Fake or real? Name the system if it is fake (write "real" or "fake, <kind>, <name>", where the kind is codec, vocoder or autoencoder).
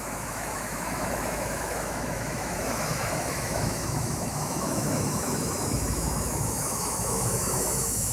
fake, autoencoder, DAC-VAE